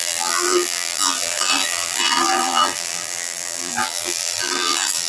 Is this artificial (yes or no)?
yes